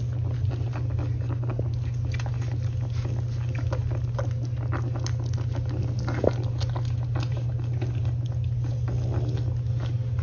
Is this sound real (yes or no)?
yes